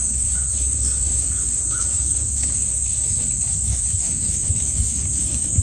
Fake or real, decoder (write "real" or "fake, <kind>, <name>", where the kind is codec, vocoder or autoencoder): fake, codec, DAC